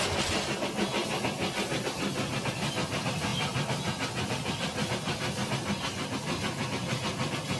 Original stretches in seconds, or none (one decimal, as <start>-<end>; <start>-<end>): 0.0-7.6